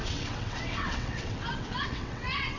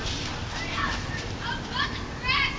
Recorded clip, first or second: second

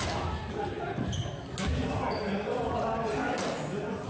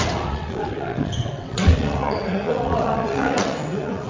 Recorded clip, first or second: first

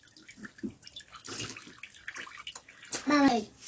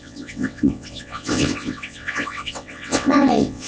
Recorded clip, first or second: first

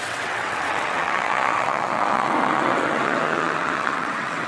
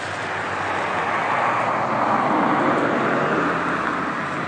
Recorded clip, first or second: second